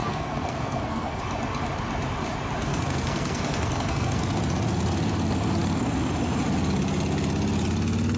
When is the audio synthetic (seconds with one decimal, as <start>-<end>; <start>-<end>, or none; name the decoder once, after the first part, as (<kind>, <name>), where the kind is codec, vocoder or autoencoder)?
0.0-1.2 (codec, SNAC); 2.7-4.2